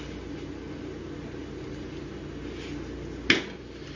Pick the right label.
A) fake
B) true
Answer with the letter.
B